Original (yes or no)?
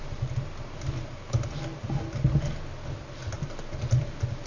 yes